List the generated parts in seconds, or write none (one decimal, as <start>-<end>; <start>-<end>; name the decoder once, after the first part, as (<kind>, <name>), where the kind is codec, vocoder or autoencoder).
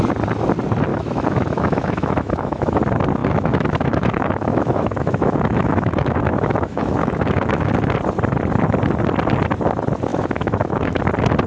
0.9-2.8 (autoencoder, DAC-VAE); 3.2-7.7; 10.1-11.0